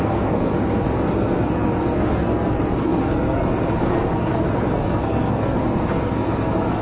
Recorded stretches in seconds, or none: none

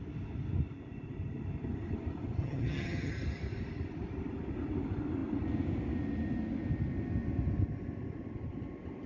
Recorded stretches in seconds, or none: 0.0-2.4; 3.1-9.1

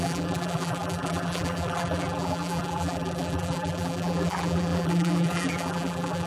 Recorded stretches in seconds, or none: none

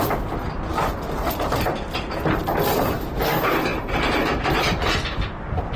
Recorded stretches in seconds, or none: 0.0-2.7; 3.2-5.8